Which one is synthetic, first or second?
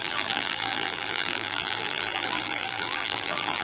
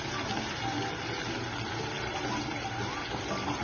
first